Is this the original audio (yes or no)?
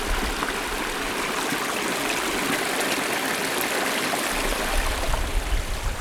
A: yes